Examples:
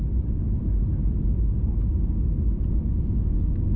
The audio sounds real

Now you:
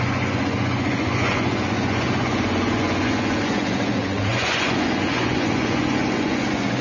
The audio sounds fake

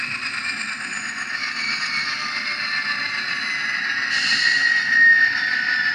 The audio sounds real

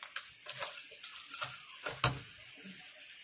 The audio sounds real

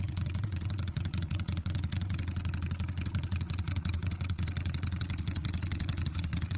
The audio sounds fake